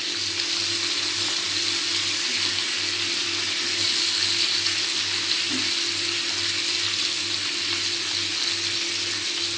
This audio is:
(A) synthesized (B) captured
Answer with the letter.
B